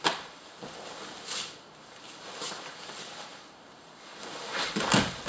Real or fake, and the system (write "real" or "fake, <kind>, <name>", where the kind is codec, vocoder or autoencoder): real